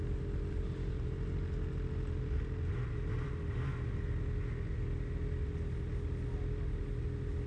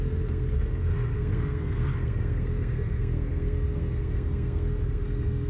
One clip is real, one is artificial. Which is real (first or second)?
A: first